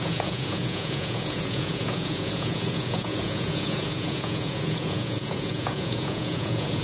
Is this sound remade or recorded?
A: remade